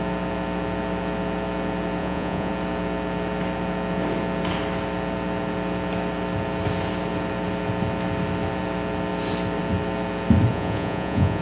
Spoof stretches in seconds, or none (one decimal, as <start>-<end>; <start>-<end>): 2.0-2.5; 10.5-11.4